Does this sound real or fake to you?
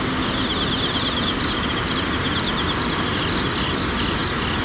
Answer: real